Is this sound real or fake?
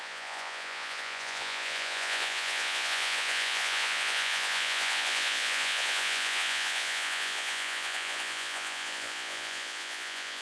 fake